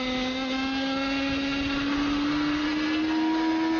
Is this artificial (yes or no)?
no